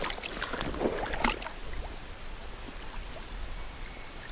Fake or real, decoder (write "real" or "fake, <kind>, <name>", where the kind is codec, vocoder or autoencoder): real